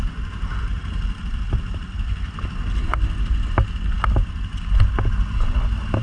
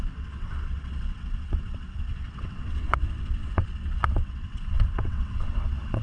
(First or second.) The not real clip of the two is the second